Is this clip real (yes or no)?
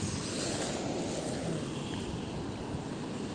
yes